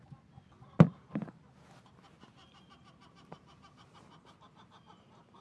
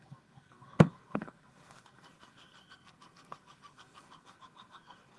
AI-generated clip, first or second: second